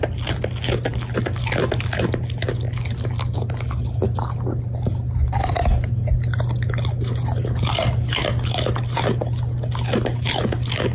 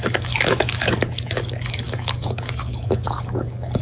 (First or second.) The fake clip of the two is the second